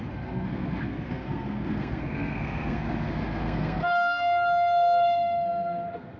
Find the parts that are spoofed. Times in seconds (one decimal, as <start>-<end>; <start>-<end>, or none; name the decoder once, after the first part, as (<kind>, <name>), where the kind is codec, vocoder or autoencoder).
0.0-6.2 (codec, SNAC)